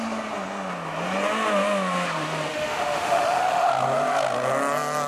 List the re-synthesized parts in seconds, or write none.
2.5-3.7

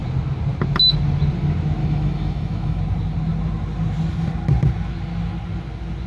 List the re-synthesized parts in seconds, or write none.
1.8-2.8